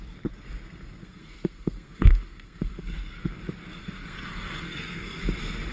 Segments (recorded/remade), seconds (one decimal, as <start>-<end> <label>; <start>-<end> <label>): 0.0-1.0 recorded; 1.0-3.3 remade; 3.3-3.8 recorded; 3.8-5.2 remade; 5.2-5.7 recorded